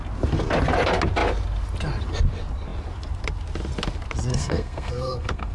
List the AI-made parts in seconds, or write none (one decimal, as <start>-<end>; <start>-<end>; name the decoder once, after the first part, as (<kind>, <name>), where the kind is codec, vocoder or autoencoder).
4.3-5.5 (codec, SNAC)